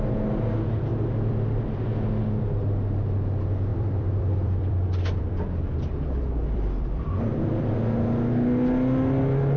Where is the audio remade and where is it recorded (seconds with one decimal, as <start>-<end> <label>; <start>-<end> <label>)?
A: 0.0-0.9 recorded; 0.9-1.8 remade; 1.8-3.7 recorded; 3.7-7.7 remade; 7.7-9.6 recorded